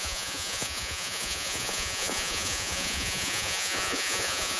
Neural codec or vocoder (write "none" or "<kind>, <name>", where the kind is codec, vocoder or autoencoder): vocoder, Vocos